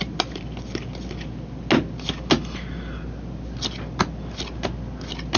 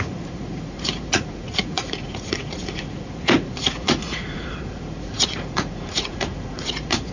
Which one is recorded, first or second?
first